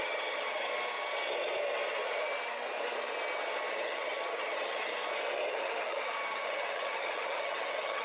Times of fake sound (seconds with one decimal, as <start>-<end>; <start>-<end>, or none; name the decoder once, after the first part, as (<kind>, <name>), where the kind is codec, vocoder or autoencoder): 0.0-0.7 (vocoder, HiFi-GAN); 3.7-4.9; 5.5-8.0